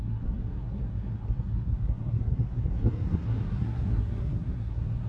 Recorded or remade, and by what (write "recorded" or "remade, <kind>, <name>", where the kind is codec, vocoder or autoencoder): remade, codec, SNAC